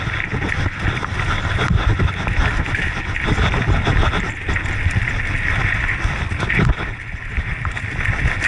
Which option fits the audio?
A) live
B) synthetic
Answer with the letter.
A